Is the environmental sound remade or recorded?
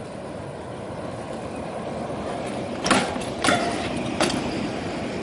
recorded